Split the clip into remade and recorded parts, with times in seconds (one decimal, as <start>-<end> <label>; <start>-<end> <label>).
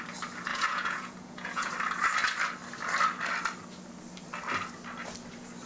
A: 0.0-0.5 recorded; 0.5-1.7 remade; 1.7-5.7 recorded